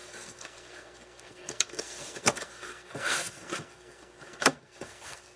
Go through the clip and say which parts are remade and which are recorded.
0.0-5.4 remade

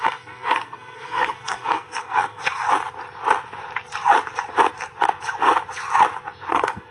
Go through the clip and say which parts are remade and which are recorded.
0.0-2.4 remade; 2.4-6.5 recorded; 6.5-6.9 remade